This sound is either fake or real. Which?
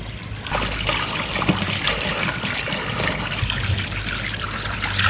real